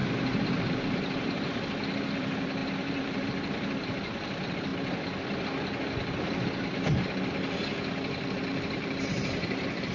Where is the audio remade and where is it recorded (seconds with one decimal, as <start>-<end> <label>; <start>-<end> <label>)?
0.0-4.7 remade; 4.7-6.6 recorded; 6.6-7.7 remade; 7.7-8.2 recorded; 8.2-9.9 remade